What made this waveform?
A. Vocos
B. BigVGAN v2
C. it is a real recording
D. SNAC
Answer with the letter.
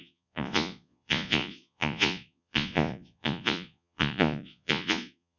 A